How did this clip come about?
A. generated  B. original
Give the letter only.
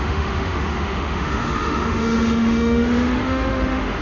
A